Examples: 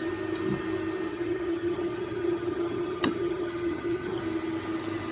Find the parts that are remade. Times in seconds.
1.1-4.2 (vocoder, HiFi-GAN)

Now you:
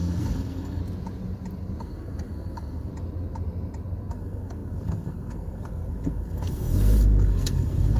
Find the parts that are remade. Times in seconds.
0.0-0.8 (codec, SNAC); 1.8-2.9; 4.1-8.0

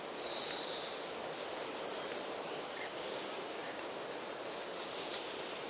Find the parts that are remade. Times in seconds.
2.9-4.0 (codec, DAC)